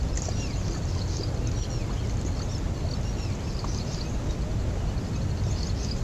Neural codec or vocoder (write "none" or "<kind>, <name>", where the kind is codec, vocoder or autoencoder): none